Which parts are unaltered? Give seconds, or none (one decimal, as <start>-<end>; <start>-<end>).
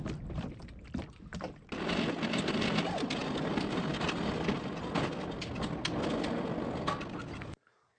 0.0-8.0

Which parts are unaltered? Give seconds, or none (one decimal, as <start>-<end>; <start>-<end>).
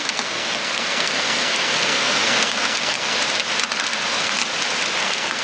3.2-3.7; 4.4-5.0